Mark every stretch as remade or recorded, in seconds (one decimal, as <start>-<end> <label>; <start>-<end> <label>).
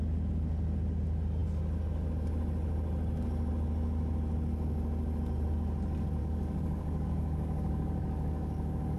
0.0-6.2 recorded; 6.2-9.0 remade